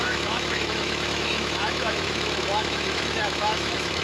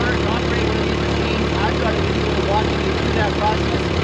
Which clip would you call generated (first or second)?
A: first